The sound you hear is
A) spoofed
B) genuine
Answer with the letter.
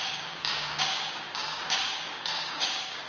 A